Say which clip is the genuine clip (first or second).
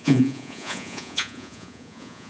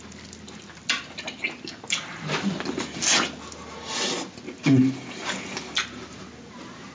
second